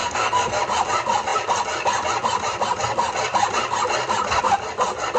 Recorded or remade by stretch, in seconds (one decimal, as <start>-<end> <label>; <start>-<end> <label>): 0.0-0.6 remade; 0.6-5.2 recorded